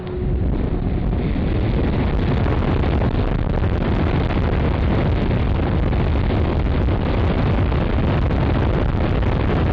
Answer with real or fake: real